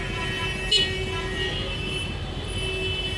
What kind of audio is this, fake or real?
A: real